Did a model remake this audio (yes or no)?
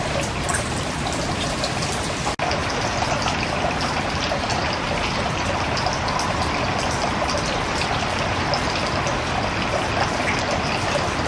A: no